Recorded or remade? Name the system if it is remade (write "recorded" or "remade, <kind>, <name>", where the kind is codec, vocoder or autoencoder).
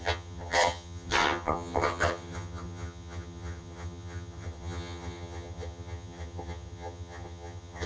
remade, vocoder, HiFi-GAN